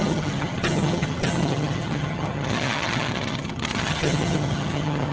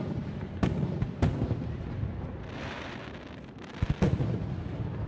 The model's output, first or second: first